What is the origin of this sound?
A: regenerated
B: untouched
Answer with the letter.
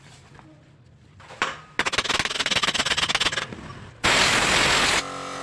B